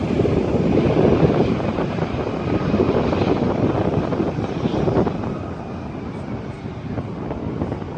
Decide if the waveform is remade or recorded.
recorded